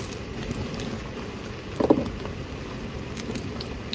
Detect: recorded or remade recorded